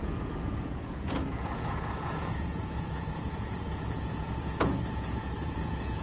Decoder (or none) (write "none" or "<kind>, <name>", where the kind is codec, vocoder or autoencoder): vocoder, Vocos